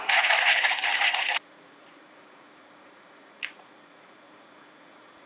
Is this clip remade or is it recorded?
remade